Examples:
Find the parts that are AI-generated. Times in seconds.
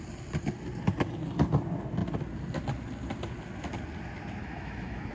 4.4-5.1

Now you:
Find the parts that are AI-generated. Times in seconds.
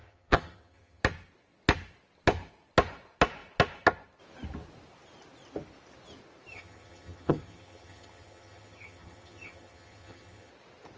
0.0-1.0; 6.5-10.5